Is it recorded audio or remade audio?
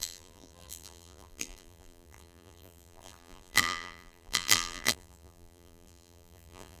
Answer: remade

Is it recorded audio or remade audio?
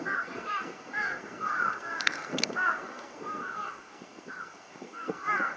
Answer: remade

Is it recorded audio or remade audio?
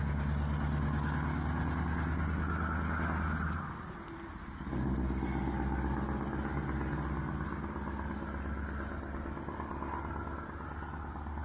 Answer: recorded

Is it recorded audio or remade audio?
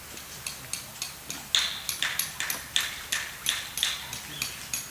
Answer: recorded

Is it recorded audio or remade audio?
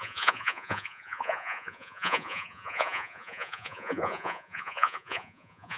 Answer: remade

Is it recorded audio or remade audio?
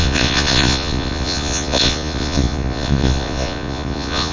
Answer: remade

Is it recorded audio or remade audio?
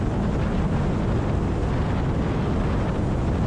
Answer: recorded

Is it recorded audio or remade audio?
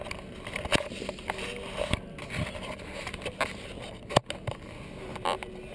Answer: recorded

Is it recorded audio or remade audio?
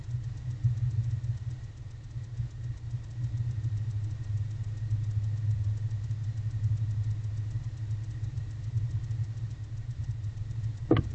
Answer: recorded